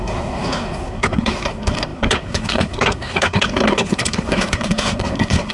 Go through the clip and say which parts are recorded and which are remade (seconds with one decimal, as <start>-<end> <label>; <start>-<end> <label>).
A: 0.0-5.5 remade